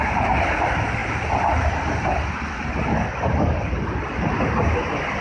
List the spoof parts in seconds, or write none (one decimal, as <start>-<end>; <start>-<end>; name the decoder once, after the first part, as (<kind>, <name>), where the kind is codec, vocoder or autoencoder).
none